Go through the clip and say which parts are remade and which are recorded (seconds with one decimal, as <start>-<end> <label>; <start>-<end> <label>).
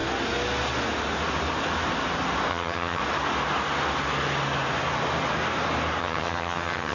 0.0-2.5 recorded; 2.5-3.0 remade; 3.0-6.0 recorded; 6.0-6.9 remade